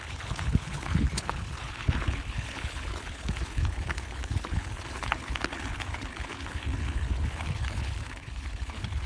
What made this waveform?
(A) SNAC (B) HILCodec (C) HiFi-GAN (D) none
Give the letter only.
B